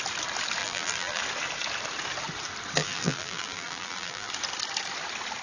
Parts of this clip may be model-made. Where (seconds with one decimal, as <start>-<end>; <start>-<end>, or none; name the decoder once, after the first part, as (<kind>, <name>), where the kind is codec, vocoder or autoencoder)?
0.6-1.2 (vocoder, BigVGAN v2); 2.8-4.3

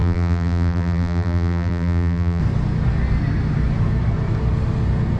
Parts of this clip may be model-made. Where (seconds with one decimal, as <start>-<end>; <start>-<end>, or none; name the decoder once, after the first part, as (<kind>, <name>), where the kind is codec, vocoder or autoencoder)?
0.0-2.4 (vocoder, BigVGAN v2)

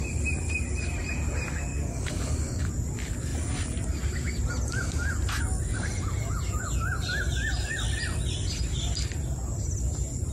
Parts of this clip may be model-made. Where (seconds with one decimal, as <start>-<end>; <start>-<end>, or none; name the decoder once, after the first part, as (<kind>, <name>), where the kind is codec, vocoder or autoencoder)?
1.7-2.7 (codec, DAC)